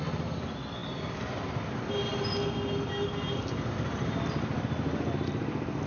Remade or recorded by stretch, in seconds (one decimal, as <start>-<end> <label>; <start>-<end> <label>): 0.0-5.9 recorded